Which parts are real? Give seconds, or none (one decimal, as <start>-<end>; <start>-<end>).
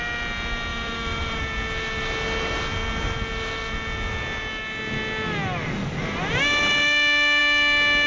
0.0-0.7; 1.4-8.1